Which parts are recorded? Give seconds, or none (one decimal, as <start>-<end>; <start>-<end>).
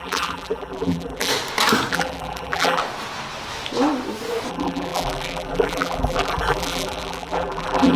1.3-1.9; 2.8-4.5